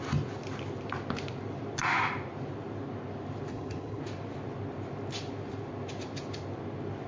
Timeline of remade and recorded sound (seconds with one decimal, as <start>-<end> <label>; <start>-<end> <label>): 0.0-3.5 recorded; 3.5-4.0 remade; 4.0-7.1 recorded